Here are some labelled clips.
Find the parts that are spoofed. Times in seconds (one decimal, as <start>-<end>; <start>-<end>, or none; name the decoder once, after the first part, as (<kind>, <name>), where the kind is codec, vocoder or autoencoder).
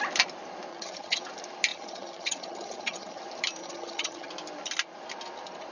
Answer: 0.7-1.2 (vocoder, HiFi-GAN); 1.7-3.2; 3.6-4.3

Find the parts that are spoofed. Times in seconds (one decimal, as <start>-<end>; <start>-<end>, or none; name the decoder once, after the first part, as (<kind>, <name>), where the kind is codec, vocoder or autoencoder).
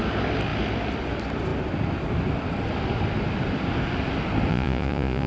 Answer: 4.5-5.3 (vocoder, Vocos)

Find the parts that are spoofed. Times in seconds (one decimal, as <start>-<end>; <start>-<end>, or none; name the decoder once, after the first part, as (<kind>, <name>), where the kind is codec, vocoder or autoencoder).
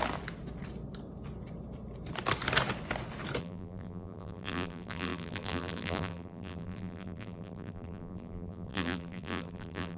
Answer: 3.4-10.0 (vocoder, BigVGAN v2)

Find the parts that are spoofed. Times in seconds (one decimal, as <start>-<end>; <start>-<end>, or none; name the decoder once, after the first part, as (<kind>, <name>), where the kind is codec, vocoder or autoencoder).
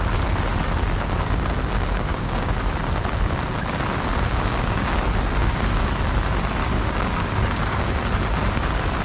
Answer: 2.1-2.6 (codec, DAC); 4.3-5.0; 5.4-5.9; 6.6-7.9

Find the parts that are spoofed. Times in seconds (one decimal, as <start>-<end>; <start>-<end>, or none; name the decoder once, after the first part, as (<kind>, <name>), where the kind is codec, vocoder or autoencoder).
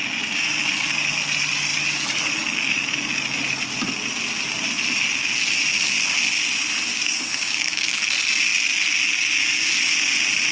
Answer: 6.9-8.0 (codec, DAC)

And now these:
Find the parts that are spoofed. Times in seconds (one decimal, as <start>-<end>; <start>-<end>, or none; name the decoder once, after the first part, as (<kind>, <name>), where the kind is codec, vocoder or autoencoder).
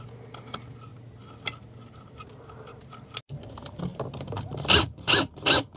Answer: 3.9-5.3 (vocoder, BigVGAN v2)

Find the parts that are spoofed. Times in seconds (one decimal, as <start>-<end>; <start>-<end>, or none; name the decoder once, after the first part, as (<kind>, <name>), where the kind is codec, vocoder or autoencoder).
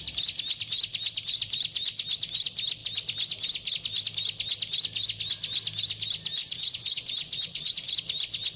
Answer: 6.4-7.9 (vocoder, Vocos)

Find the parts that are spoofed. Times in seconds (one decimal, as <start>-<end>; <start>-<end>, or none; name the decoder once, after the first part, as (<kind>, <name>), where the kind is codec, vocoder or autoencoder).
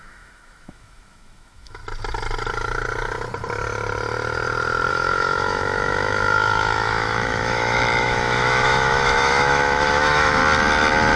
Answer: 0.0-1.8 (autoencoder, DAC-VAE); 4.9-10.4